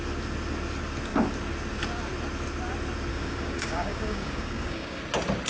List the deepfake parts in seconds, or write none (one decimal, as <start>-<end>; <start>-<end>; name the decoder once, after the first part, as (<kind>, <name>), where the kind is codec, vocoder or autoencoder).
3.1-5.0 (codec, DAC)